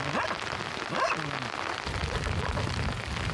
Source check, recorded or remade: recorded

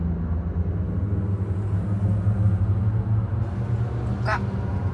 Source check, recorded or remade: recorded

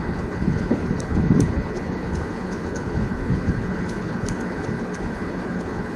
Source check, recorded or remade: remade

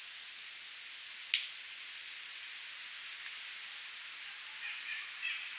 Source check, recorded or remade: recorded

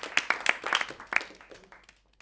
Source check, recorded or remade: recorded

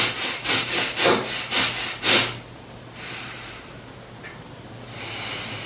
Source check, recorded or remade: recorded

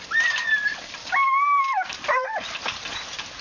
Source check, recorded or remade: recorded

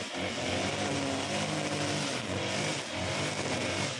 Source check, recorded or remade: recorded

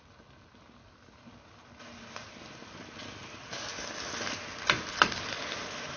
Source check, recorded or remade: recorded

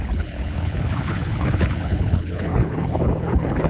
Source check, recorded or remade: remade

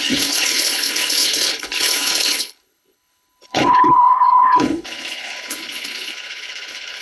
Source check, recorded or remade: remade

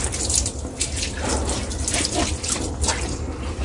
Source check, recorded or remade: recorded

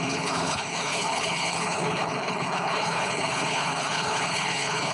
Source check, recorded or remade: remade